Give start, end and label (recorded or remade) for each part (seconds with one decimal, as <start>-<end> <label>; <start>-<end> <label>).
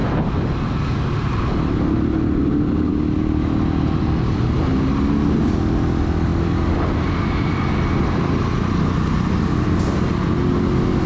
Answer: 0.0-11.1 recorded